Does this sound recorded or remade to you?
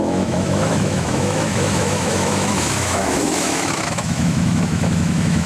remade